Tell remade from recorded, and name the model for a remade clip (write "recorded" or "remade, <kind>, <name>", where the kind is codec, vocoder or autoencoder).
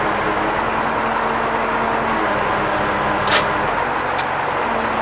recorded